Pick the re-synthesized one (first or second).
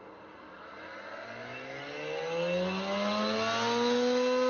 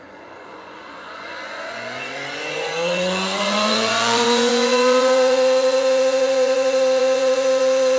second